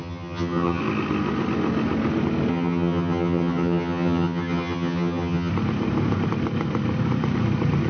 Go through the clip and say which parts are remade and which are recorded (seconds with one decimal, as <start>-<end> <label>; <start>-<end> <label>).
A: 0.0-0.8 remade; 0.8-2.5 recorded; 2.5-5.5 remade; 5.5-7.9 recorded